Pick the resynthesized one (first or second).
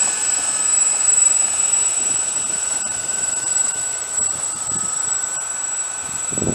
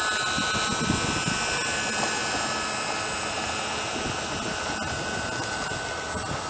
first